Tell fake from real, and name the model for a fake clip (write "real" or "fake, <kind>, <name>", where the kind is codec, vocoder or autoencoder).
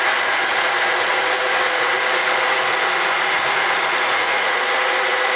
fake, vocoder, Vocos